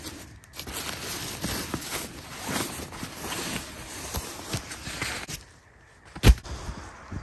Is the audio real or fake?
real